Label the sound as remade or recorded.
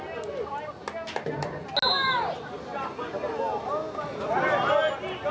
recorded